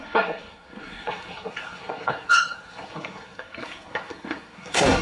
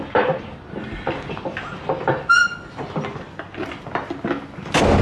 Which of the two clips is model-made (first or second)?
first